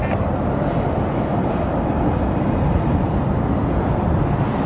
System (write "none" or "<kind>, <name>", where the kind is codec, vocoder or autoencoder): none